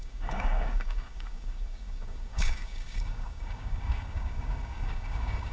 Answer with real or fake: fake